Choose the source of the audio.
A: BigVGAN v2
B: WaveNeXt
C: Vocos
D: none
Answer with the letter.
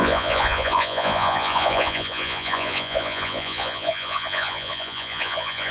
C